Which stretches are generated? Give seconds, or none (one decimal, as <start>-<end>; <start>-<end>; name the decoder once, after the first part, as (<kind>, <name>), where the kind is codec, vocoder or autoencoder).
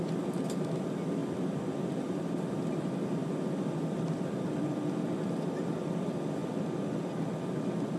none